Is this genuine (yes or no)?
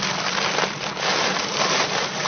yes